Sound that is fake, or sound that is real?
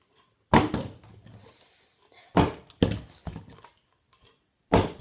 real